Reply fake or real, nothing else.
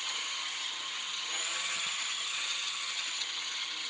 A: fake